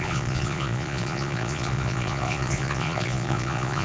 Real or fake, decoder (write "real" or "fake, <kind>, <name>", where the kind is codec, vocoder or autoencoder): fake, vocoder, Vocos